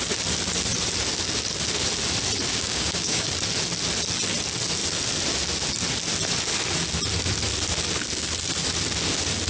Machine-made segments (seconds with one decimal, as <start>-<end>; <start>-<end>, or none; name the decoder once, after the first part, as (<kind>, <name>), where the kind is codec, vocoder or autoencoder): 2.5-3.3 (codec, DAC)

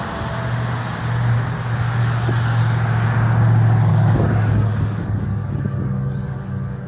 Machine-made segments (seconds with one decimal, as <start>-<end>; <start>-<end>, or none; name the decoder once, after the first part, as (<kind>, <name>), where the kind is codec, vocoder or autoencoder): 2.0-2.6 (codec, DAC); 3.9-6.9

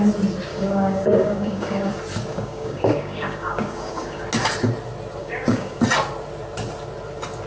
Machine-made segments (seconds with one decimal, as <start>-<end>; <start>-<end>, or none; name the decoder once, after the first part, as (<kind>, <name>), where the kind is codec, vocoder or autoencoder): 0.5-1.9 (codec, DAC); 2.3-4.2; 5.2-5.8

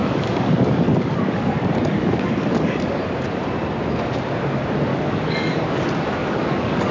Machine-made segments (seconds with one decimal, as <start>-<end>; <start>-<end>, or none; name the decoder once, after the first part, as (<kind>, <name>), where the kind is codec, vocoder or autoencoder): 0.0-3.0 (codec, DAC); 4.9-5.8; 6.2-6.9

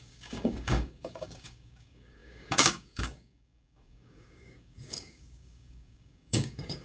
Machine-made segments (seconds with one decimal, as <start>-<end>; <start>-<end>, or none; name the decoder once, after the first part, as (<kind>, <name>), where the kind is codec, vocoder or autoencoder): 0.0-6.8 (codec, DAC)

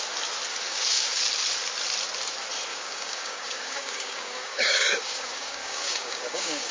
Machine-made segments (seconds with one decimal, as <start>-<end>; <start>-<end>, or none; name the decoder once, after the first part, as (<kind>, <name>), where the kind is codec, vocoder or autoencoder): 0.5-1.2 (codec, DAC); 2.7-6.7